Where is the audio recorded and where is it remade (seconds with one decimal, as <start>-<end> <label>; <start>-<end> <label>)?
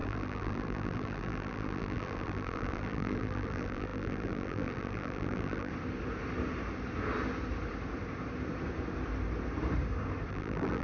0.0-5.7 remade; 5.7-10.3 recorded; 10.3-10.8 remade